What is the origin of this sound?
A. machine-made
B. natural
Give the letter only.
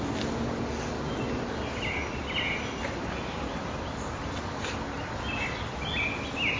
B